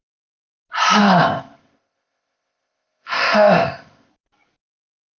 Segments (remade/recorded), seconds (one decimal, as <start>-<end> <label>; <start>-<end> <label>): 0.0-1.0 recorded; 1.0-4.1 remade; 4.1-5.2 recorded